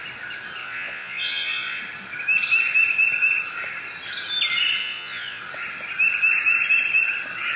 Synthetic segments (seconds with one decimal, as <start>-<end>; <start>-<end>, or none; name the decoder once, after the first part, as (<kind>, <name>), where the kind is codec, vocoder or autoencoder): 0.6-1.8 (vocoder, Vocos); 4.8-5.4